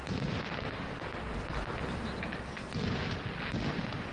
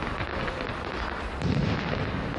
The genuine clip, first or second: first